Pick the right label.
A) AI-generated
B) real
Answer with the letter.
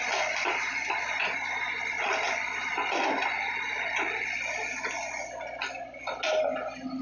B